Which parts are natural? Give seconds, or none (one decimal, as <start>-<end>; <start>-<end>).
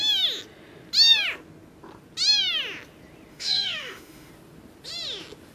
0.0-3.3; 4.3-5.5